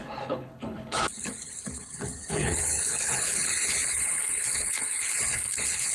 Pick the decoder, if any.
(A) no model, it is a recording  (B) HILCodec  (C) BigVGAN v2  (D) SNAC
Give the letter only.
B